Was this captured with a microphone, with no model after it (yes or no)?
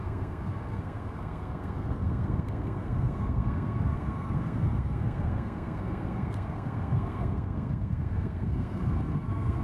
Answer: no